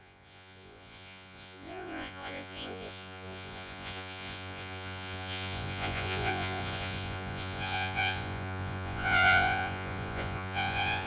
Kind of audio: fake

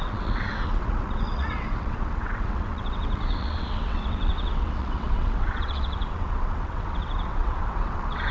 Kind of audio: fake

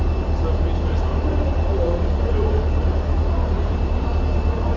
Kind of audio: fake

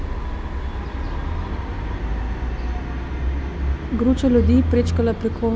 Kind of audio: real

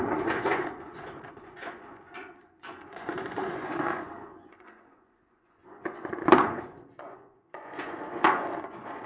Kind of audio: fake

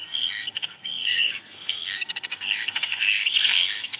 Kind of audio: fake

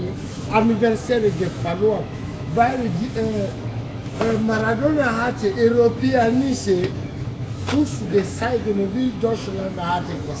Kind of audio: fake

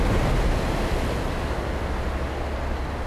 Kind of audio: real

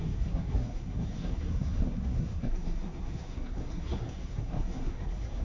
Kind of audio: fake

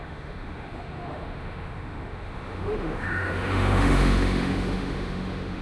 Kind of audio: fake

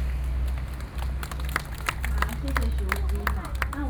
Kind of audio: real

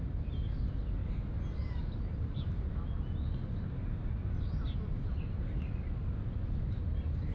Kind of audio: real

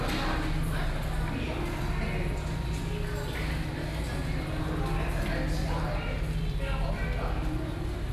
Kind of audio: real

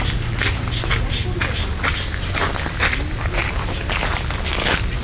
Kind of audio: real